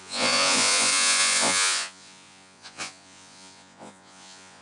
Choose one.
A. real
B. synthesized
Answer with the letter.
B